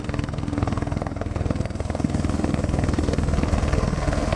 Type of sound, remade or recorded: remade